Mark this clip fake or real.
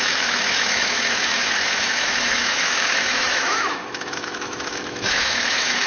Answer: fake